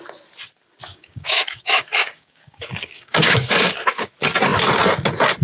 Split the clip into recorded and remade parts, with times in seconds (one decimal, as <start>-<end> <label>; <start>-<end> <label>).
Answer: 0.0-0.9 recorded; 0.9-4.1 remade; 4.1-5.4 recorded